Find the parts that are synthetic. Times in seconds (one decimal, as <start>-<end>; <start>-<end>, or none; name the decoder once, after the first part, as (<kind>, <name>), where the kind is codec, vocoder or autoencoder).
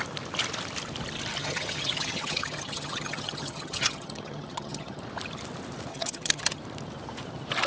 1.4-5.0 (vocoder, HiFi-GAN); 5.9-6.6